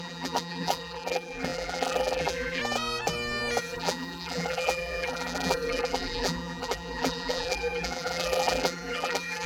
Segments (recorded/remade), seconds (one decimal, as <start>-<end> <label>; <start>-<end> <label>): 0.0-2.6 remade; 2.6-3.6 recorded; 3.6-9.5 remade